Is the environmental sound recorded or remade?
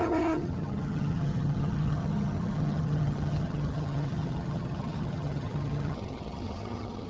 remade